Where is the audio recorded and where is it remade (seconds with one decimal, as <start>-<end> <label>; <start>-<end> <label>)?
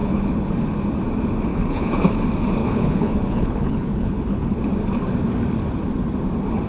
0.0-0.5 remade; 0.5-1.5 recorded; 1.5-2.1 remade; 2.1-2.6 recorded; 2.6-4.6 remade; 4.6-6.7 recorded